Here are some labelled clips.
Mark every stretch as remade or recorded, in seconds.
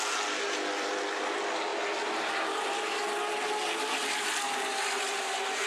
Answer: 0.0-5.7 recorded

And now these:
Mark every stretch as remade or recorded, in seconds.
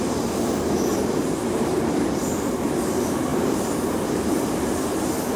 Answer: 0.0-0.9 recorded; 0.9-2.2 remade; 2.2-3.3 recorded; 3.3-5.0 remade; 5.0-5.4 recorded